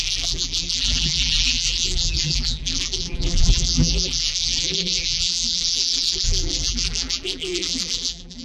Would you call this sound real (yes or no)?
no